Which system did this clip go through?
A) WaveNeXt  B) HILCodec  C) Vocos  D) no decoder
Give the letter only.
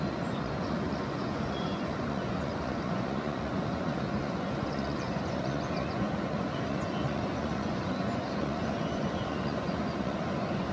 C